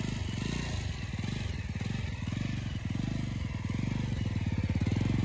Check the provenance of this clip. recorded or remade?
recorded